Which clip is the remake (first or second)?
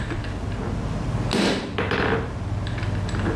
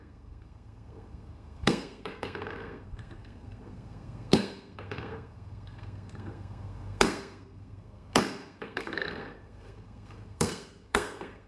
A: second